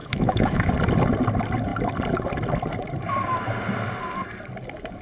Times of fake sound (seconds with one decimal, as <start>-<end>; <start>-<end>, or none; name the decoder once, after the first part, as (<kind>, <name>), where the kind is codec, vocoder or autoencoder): 0.0-0.7 (autoencoder, DAC-VAE)